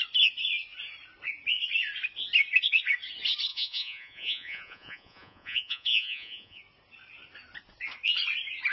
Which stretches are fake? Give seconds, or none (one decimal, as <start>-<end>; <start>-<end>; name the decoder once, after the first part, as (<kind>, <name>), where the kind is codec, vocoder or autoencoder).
3.5-6.6 (vocoder, Vocos)